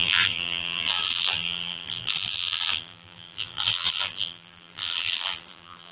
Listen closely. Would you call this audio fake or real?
fake